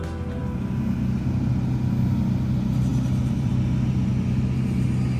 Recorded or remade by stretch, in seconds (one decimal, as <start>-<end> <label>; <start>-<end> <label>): 0.0-2.9 recorded; 2.9-3.5 remade; 3.5-5.2 recorded